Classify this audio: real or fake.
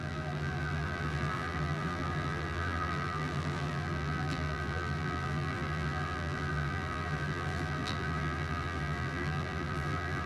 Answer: fake